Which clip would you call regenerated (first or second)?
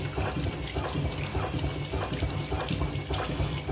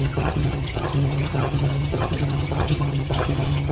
second